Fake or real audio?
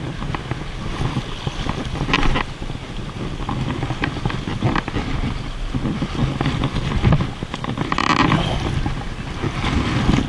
real